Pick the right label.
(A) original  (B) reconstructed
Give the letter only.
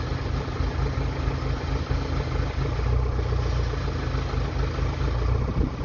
A